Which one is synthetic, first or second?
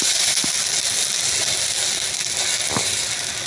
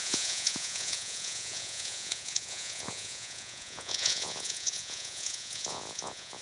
second